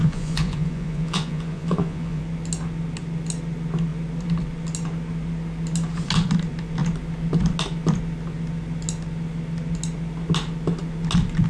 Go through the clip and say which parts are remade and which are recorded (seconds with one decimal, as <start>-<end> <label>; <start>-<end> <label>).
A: 0.0-2.2 remade; 2.2-11.5 recorded